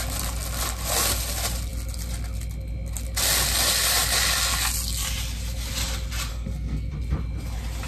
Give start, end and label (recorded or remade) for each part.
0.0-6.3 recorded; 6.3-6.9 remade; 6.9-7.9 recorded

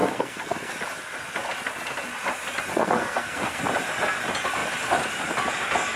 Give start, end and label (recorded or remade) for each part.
0.0-0.7 remade; 0.7-2.7 recorded; 2.7-3.6 remade; 3.6-6.0 recorded

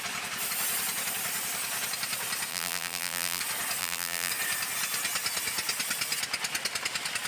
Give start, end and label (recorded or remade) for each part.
0.0-2.5 recorded; 2.5-3.4 remade; 3.4-3.8 recorded; 3.8-4.3 remade; 4.3-7.3 recorded

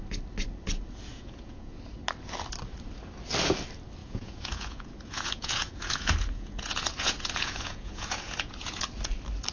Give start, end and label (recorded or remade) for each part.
0.0-1.1 recorded; 1.1-1.8 remade; 1.8-4.0 recorded; 4.0-8.8 remade; 8.8-9.5 recorded

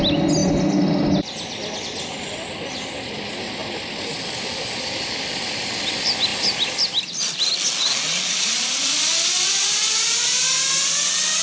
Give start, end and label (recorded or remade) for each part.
0.0-11.4 recorded

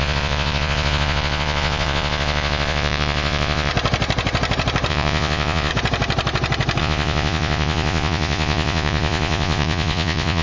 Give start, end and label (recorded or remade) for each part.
0.0-3.7 remade; 3.7-4.9 recorded; 4.9-5.7 remade; 5.7-6.8 recorded; 6.8-10.4 remade